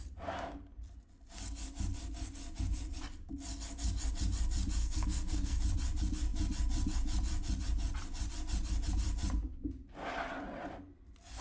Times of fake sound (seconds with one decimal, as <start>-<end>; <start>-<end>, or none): 4.8-5.6